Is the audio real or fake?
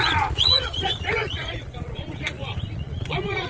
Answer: fake